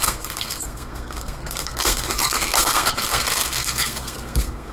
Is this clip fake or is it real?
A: fake